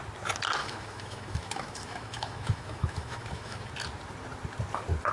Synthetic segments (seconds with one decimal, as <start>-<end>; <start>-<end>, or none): 0.6-3.7